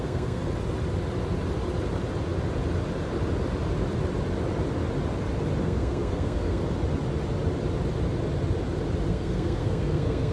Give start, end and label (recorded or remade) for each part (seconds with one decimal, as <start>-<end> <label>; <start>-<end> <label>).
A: 0.0-0.4 remade; 0.4-5.6 recorded; 5.6-6.6 remade; 6.6-9.1 recorded; 9.1-10.3 remade